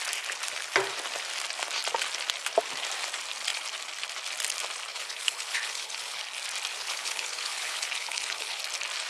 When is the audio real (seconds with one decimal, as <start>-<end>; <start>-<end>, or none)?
0.0-4.9; 6.2-6.7; 8.6-9.1